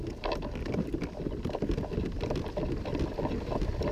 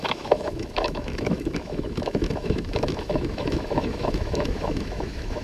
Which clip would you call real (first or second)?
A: first